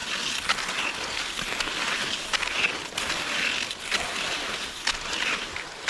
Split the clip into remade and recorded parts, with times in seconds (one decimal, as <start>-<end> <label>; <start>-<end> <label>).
0.0-5.9 recorded